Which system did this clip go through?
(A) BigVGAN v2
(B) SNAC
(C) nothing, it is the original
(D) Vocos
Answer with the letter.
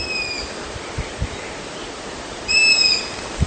C